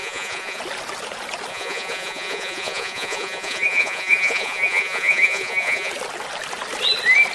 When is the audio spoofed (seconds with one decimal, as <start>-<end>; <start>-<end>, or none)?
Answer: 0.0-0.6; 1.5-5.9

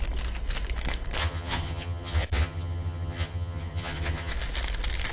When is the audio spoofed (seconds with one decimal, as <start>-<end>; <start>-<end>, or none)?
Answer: 1.2-4.3

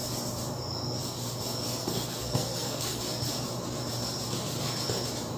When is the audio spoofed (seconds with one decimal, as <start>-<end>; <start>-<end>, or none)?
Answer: 1.8-3.0